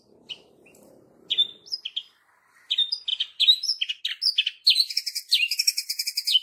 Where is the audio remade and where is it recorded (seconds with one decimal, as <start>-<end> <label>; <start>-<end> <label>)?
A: 0.0-3.1 recorded; 3.1-4.0 remade; 4.0-4.4 recorded; 4.4-5.5 remade; 5.5-6.4 recorded